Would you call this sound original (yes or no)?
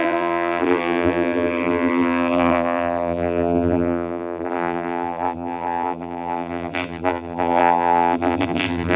no